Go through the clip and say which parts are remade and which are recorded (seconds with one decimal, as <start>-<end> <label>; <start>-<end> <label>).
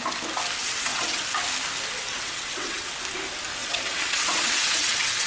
0.0-0.6 recorded; 0.6-1.2 remade; 1.2-2.1 recorded; 2.1-2.9 remade; 2.9-3.6 recorded; 3.6-5.3 remade